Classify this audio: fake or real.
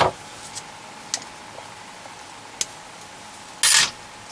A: real